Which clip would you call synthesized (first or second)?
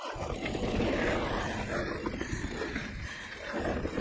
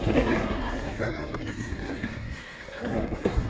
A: second